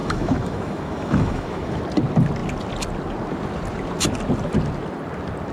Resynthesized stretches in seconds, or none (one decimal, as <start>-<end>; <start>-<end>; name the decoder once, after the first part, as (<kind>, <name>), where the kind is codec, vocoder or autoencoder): 0.0-1.8 (autoencoder, DAC-VAE)